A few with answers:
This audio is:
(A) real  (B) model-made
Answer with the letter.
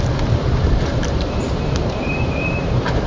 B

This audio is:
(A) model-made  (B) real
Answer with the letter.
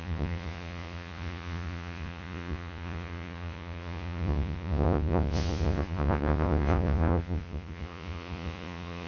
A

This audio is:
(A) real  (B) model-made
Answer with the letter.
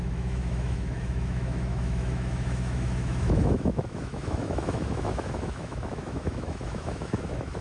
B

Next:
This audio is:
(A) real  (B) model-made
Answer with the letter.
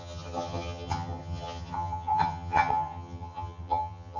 B